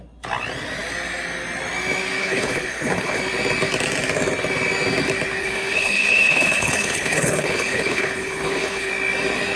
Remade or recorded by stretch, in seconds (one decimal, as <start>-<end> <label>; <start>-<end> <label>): 0.0-2.2 recorded; 2.2-3.2 remade; 3.2-5.4 recorded; 5.4-8.9 remade; 8.9-9.6 recorded